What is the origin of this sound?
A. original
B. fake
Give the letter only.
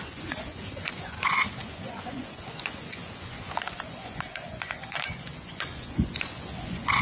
B